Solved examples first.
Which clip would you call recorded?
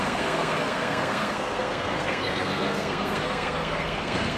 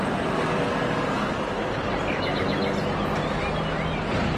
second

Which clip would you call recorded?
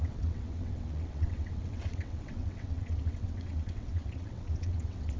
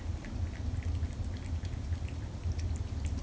second